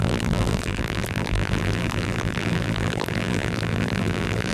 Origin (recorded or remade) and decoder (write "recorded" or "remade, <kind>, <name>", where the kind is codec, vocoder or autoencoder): remade, vocoder, BigVGAN v2